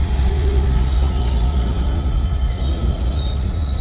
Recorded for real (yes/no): no